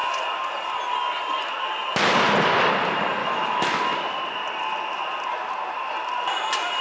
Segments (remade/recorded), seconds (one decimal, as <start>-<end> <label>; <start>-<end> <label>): 0.0-3.2 recorded; 3.2-3.8 remade; 3.8-6.8 recorded